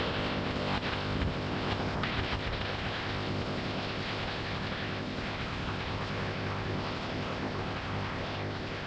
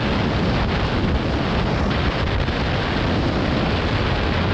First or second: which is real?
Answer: second